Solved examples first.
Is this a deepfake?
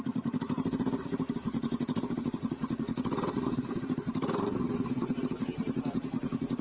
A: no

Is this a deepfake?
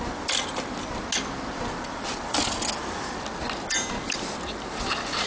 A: no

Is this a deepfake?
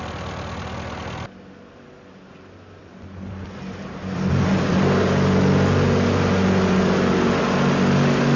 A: no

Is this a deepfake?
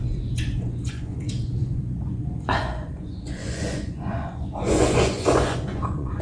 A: yes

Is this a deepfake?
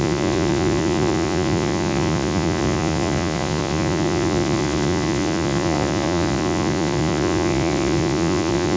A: yes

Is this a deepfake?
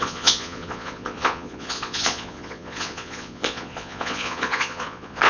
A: yes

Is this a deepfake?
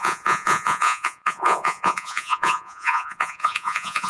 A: yes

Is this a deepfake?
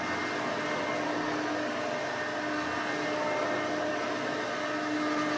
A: no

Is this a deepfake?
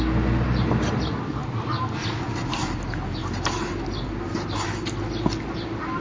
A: no